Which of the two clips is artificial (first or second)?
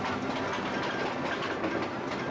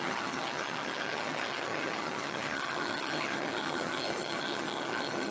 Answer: second